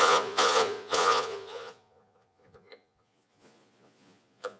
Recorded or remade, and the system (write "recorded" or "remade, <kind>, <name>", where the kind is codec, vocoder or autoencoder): remade, vocoder, Vocos